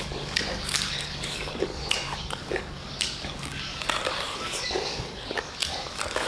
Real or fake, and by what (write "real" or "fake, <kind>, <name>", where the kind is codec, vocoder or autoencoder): fake, codec, DAC